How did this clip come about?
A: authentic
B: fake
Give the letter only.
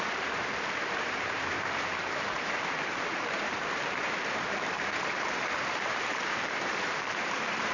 B